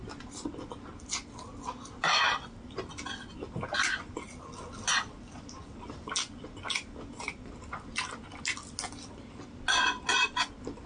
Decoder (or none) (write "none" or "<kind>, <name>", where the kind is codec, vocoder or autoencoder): none